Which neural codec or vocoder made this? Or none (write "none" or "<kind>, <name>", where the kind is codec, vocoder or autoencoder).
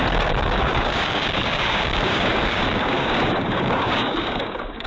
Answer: codec, DAC